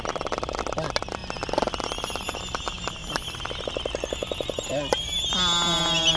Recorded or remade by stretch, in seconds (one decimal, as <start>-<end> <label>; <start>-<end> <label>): 0.0-6.2 recorded